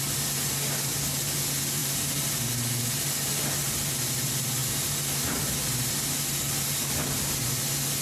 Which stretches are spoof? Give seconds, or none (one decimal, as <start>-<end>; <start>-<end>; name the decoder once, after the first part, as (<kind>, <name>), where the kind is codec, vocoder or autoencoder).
none